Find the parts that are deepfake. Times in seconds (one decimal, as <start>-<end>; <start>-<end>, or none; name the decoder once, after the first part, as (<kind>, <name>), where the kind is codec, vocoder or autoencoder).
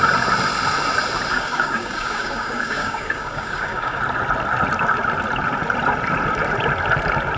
1.3-4.0 (codec, DAC)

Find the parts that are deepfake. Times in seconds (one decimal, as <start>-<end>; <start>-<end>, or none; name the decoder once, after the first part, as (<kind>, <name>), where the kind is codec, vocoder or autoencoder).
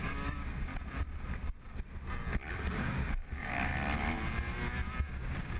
0.0-0.7 (codec, DAC); 2.5-3.7; 5.1-5.6